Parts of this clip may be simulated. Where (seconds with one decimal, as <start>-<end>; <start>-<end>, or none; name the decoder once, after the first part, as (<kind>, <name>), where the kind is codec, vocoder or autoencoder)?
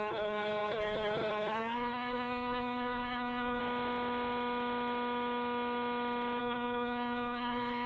0.0-3.6 (codec, SNAC); 6.4-7.9